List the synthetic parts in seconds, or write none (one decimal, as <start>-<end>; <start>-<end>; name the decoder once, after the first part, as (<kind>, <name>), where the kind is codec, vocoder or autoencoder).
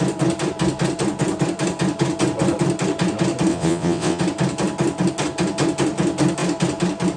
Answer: 3.5-4.2 (vocoder, WaveNeXt)